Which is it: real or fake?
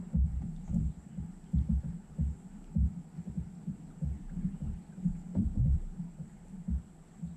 real